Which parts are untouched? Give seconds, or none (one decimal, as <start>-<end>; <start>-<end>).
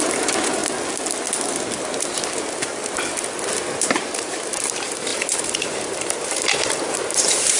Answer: 0.6-3.8